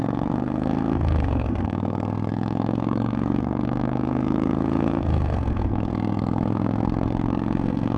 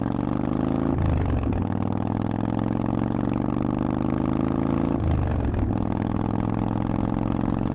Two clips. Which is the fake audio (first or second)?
first